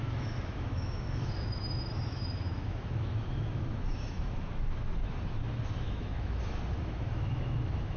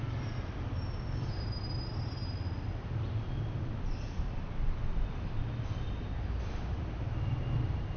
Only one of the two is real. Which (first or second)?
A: second